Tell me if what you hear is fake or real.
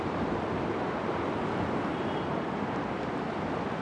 fake